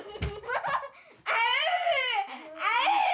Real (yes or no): no